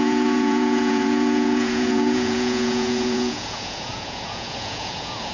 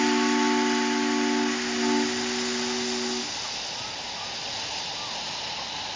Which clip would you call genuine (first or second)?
second